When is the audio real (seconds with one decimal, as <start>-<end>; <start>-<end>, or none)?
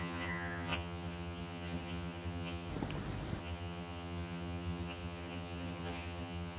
2.7-3.4